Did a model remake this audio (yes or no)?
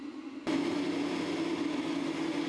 no